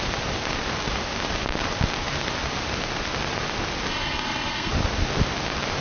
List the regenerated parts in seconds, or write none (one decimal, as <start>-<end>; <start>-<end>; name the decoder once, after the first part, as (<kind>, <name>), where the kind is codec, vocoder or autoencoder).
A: 3.9-4.7 (codec, SNAC)